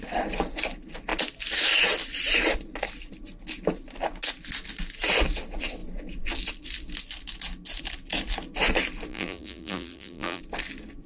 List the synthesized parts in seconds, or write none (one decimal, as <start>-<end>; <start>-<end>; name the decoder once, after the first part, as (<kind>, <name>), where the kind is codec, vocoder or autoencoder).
9.1-10.4 (vocoder, BigVGAN v2)